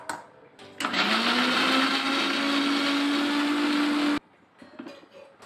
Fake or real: real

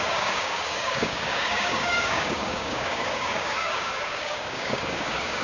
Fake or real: fake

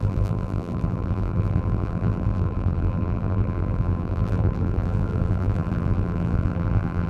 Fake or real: fake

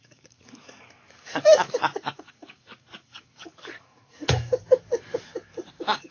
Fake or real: fake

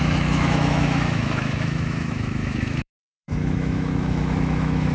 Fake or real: fake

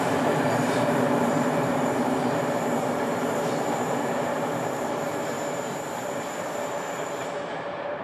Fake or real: fake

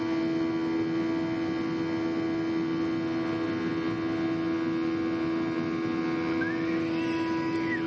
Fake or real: real